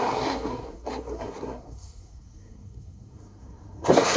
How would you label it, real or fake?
fake